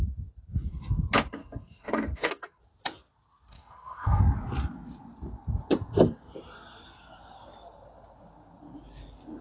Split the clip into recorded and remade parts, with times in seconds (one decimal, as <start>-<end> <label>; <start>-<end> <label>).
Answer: 0.0-1.4 recorded; 1.4-2.6 remade; 2.6-3.5 recorded; 3.5-4.2 remade; 4.2-9.4 recorded